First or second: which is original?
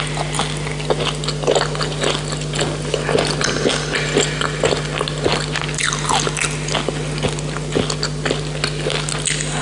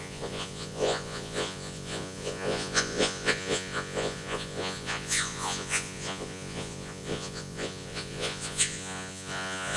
first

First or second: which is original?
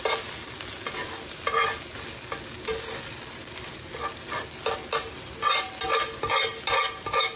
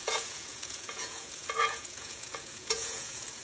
first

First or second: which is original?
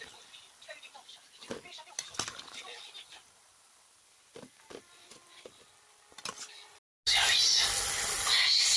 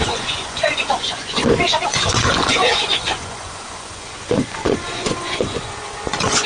first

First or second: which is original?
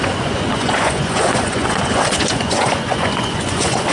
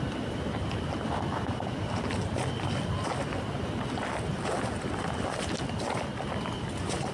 second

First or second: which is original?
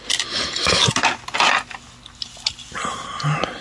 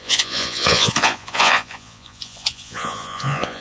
first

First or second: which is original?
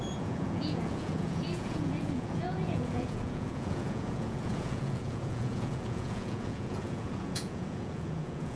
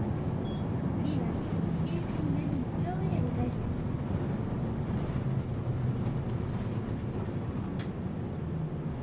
second